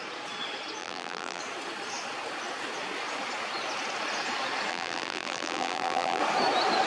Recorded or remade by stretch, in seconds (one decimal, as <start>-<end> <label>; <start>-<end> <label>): 0.0-0.8 recorded; 0.8-1.4 remade; 1.4-4.7 recorded; 4.7-6.2 remade; 6.2-6.9 recorded